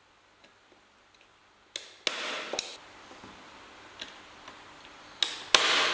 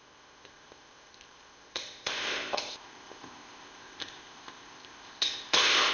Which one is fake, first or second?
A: second